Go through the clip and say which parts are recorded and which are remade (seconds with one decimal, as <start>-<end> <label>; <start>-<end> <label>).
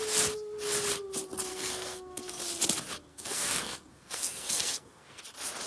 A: 0.0-1.5 recorded; 1.5-2.4 remade; 2.4-3.1 recorded; 3.1-5.2 remade; 5.2-5.7 recorded